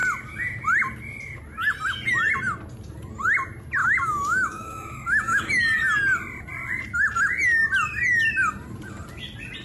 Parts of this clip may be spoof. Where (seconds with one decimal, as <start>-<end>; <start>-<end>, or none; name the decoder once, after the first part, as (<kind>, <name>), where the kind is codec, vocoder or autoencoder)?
3.8-5.5 (autoencoder, DAC-VAE)